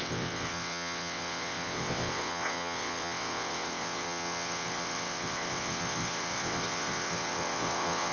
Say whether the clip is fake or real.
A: fake